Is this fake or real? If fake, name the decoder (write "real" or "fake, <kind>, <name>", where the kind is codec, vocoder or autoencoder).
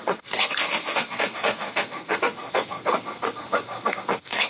fake, codec, SNAC